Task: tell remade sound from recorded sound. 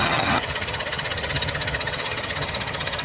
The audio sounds remade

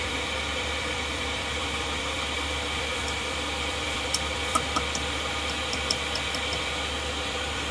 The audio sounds remade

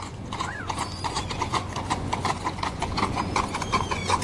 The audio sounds remade